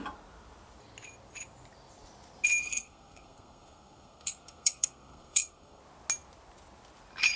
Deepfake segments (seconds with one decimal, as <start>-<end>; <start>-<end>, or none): 2.6-5.8